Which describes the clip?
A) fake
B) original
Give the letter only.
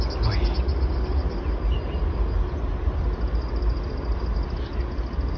B